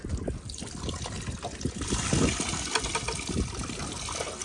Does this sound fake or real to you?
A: real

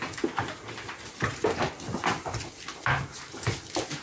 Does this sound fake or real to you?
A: real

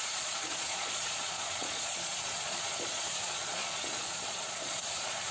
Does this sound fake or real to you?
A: fake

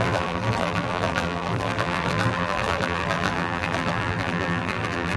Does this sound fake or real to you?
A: fake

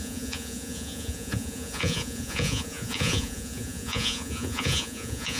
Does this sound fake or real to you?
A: fake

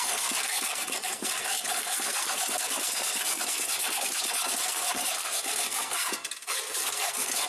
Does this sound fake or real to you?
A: fake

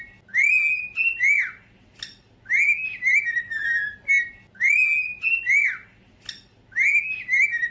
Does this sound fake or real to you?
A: real